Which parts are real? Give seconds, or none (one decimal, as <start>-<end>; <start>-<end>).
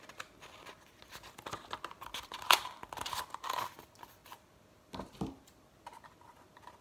0.0-6.8